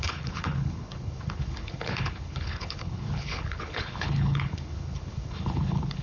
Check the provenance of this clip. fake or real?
fake